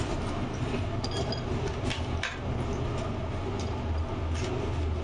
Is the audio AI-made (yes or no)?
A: no